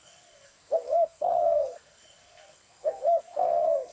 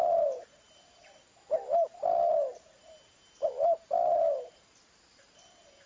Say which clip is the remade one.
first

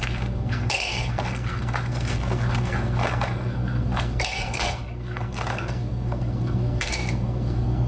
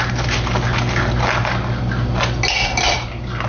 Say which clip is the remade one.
first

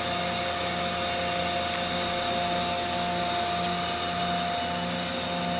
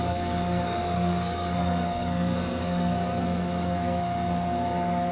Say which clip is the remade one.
second